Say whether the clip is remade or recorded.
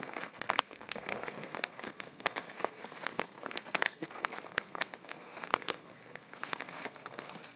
remade